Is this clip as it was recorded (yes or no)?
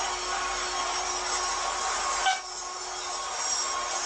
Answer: yes